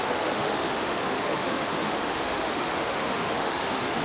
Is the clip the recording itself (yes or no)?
no